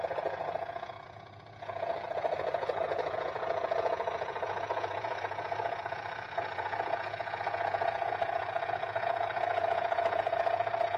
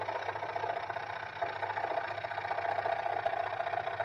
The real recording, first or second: second